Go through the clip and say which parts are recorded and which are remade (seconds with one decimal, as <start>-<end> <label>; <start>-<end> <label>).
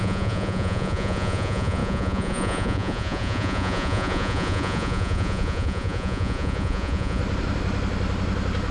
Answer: 0.0-7.2 remade; 7.2-8.7 recorded